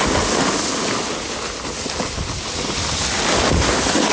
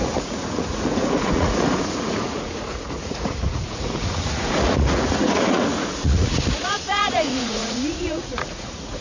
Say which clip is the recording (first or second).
first